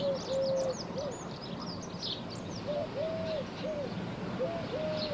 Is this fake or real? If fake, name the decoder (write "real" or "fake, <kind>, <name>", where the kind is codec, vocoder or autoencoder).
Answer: real